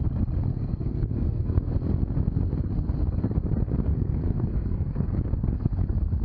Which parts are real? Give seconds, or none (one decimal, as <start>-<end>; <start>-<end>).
0.0-0.5; 1.7-3.9; 5.2-6.2